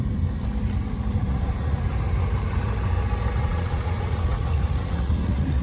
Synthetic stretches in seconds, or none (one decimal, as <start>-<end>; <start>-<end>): 1.2-1.8; 3.4-5.6